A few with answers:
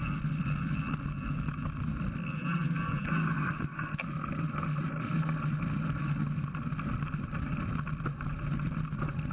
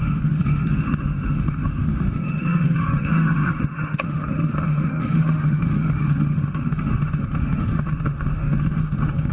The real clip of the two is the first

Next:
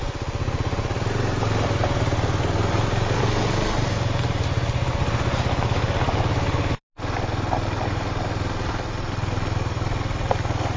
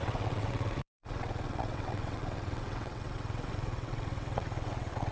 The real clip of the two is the first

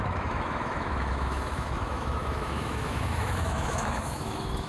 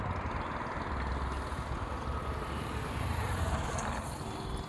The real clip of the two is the second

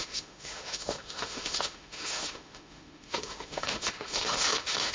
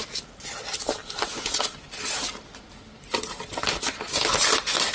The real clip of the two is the second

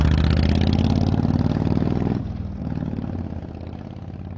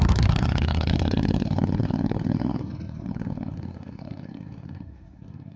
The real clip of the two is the first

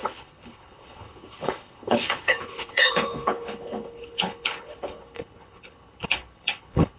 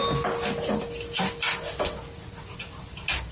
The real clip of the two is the second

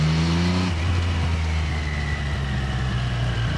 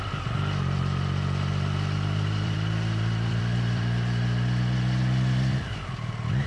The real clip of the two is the first